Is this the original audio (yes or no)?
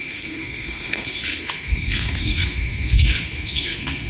no